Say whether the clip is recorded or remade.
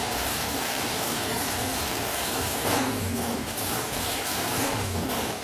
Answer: remade